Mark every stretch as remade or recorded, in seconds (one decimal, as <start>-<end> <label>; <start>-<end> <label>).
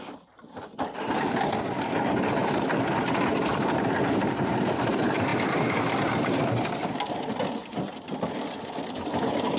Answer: 0.0-9.6 recorded